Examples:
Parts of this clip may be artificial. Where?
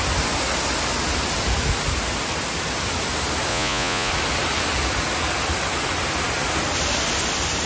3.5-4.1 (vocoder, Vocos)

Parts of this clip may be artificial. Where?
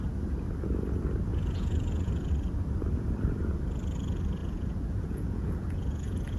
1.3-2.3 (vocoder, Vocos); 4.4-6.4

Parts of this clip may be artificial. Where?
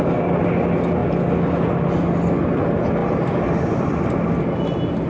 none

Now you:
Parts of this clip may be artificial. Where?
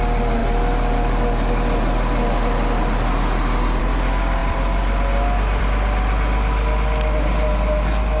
none